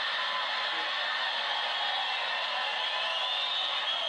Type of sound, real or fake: real